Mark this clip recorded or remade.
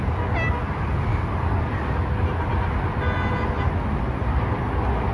recorded